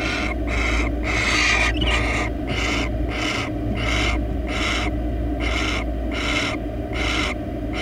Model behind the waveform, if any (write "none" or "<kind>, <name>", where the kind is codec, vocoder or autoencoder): none